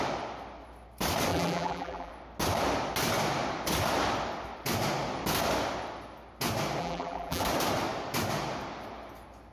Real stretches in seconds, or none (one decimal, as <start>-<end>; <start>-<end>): 0.0-1.3; 2.1-6.8; 7.4-9.5